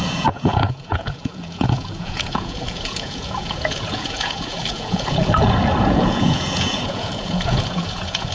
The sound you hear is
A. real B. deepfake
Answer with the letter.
B